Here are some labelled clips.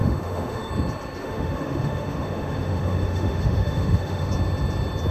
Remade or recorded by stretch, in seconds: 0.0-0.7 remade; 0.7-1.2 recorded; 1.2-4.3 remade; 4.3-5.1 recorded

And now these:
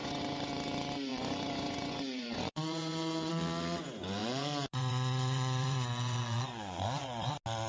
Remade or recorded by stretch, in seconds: 0.0-0.5 remade; 0.5-1.1 recorded; 1.1-3.3 remade; 3.3-4.2 recorded; 4.2-7.3 remade; 7.3-7.7 recorded

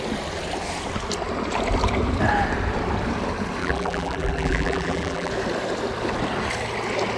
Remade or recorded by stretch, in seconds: 0.0-3.6 recorded; 3.6-5.3 remade; 5.3-7.2 recorded

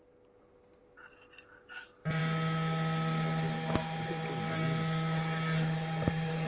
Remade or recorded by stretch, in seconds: 0.0-2.2 remade; 2.2-6.1 recorded; 6.1-6.5 remade

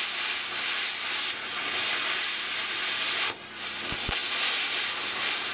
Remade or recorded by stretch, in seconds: 0.0-5.5 recorded

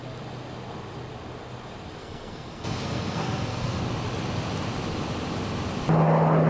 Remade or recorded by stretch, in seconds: 0.0-2.0 recorded; 2.0-3.8 remade; 3.8-6.5 recorded